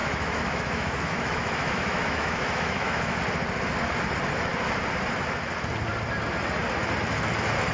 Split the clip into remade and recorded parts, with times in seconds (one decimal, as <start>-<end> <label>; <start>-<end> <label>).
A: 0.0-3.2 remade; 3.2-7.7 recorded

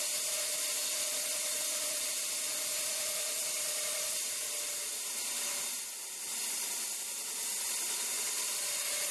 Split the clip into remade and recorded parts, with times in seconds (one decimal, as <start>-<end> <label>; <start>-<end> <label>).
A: 0.0-9.1 recorded

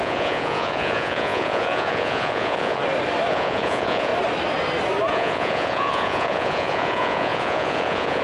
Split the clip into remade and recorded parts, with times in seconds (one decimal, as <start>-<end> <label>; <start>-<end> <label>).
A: 0.0-2.8 remade; 2.8-3.3 recorded; 3.3-4.1 remade; 4.1-5.1 recorded; 5.1-8.2 remade

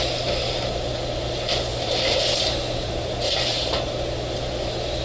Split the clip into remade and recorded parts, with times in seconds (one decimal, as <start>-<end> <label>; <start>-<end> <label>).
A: 0.0-1.7 recorded; 1.7-3.9 remade; 3.9-5.0 recorded

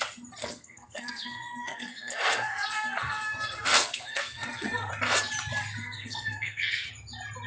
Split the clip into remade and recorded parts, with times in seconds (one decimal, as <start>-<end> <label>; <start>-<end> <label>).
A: 0.0-0.4 recorded; 0.4-4.9 remade; 4.9-5.8 recorded; 5.8-6.9 remade; 6.9-7.5 recorded

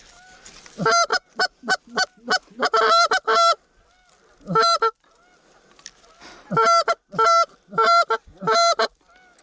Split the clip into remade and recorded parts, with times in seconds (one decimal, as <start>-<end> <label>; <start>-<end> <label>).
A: 0.0-1.1 recorded; 1.1-1.8 remade; 1.8-9.4 recorded

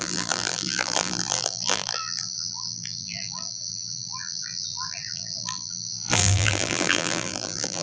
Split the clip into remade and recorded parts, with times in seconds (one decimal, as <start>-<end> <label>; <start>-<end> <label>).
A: 0.0-7.8 remade